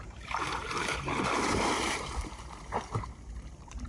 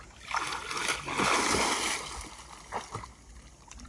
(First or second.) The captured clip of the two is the second